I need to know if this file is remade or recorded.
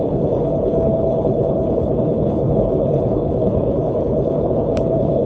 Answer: remade